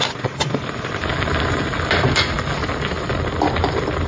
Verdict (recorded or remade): recorded